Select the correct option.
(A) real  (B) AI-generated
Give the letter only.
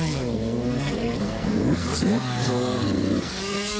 B